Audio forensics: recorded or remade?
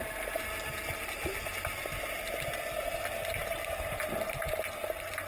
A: recorded